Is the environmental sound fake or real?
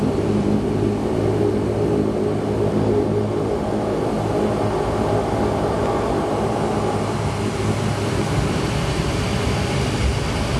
real